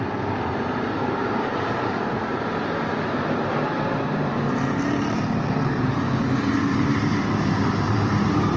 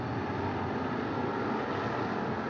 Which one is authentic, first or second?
second